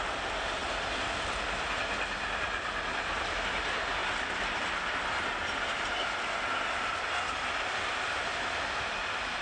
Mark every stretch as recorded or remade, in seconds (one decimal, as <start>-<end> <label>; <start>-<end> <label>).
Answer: 0.0-9.4 recorded